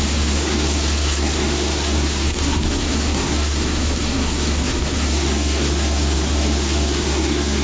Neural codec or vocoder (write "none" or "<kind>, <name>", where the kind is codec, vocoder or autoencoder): codec, SNAC